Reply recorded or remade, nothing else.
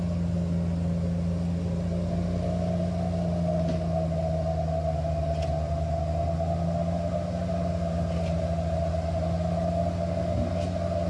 recorded